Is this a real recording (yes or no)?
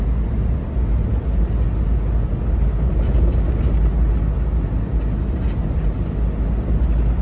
yes